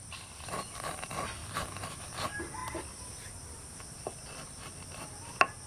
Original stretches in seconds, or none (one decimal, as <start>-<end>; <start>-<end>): 0.0-2.6; 4.4-5.7

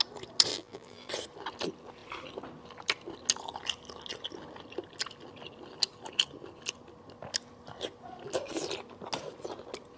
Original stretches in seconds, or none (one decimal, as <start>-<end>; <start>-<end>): 0.0-0.5; 1.1-10.0

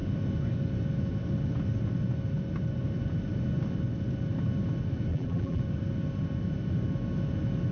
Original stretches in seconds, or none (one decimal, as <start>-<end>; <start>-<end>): 0.0-5.1; 5.6-7.7

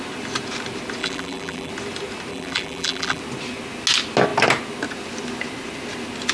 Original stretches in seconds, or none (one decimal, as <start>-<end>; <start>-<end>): 0.0-1.0; 1.7-2.3; 3.2-6.3

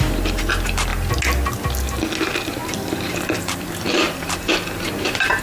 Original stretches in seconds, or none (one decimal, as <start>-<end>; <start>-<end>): 0.9-2.2

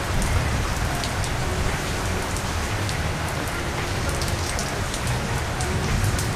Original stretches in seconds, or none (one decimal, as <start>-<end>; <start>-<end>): 1.5-2.0; 4.6-5.6